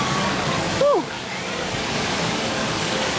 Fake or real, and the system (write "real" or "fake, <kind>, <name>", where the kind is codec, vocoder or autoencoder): fake, codec, DAC